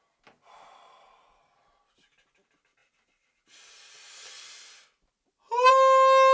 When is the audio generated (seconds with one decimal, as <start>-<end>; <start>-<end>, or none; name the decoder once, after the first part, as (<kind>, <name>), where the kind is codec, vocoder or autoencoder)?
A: none